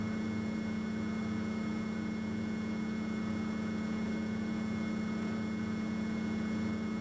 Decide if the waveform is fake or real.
fake